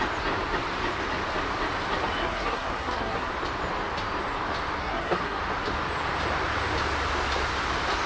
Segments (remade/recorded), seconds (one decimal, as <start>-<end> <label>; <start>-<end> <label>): 0.0-2.2 recorded; 2.2-3.3 remade; 3.3-4.8 recorded; 4.8-5.4 remade; 5.4-8.1 recorded